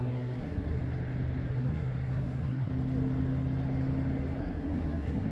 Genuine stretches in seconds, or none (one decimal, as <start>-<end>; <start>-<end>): 0.8-1.5; 2.7-4.4